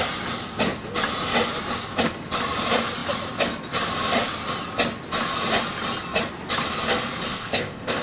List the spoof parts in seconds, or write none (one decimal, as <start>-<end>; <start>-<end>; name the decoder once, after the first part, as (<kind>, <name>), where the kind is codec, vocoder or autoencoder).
7.3-8.0 (codec, ZipCodec)